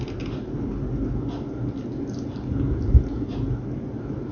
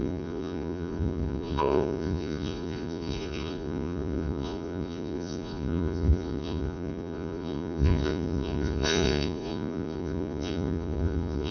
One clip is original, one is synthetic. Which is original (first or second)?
first